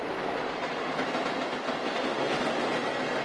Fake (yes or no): no